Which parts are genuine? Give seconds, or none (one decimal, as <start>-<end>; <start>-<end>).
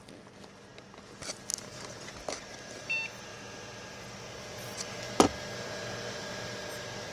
0.0-7.1